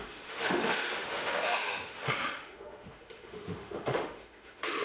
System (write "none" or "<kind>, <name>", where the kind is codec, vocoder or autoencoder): autoencoder, DAC-VAE